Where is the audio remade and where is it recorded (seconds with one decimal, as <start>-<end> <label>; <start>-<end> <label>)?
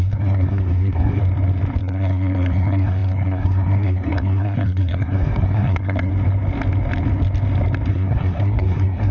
0.0-1.2 remade; 1.2-1.8 recorded; 1.8-6.1 remade; 6.1-7.9 recorded; 7.9-9.1 remade